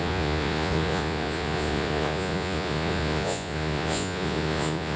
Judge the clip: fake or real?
fake